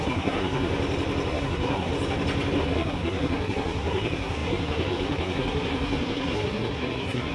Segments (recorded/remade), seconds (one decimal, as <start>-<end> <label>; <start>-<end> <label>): 0.0-0.7 remade; 0.7-1.3 recorded; 1.3-1.9 remade; 1.9-2.6 recorded; 2.6-7.3 remade